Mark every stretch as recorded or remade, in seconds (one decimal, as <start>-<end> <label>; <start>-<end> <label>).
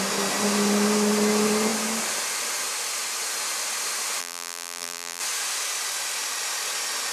0.0-4.2 recorded; 4.2-5.2 remade; 5.2-7.1 recorded